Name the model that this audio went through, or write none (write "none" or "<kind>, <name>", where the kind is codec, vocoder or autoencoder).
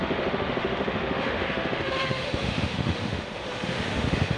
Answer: autoencoder, DAC-VAE